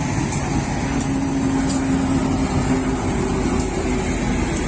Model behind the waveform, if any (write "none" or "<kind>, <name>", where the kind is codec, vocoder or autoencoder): none